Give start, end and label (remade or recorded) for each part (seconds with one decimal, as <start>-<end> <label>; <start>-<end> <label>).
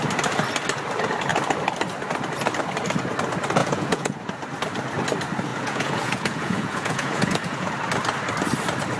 0.0-3.6 recorded; 3.6-4.2 remade; 4.2-5.5 recorded; 5.5-7.7 remade; 7.7-9.0 recorded